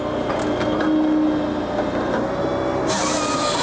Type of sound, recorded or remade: recorded